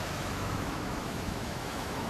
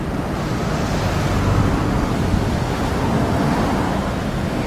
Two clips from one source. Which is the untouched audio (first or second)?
second